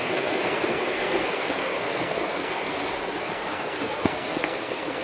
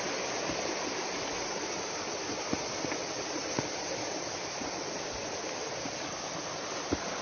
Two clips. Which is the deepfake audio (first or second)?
first